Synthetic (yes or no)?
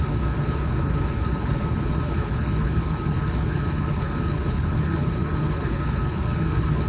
yes